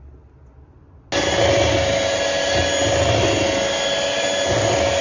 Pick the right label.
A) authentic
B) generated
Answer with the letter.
A